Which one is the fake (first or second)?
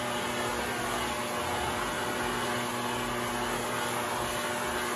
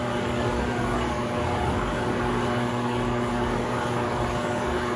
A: second